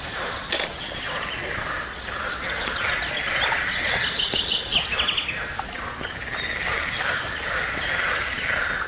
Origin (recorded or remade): recorded